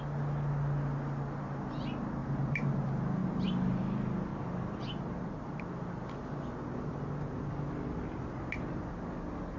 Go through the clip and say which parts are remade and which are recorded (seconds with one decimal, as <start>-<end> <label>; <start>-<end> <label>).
0.0-2.2 recorded; 2.2-2.8 remade; 2.8-9.6 recorded